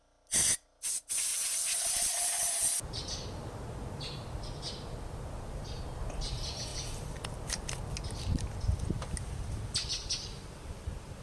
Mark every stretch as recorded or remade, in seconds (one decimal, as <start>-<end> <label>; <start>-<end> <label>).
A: 0.0-11.2 recorded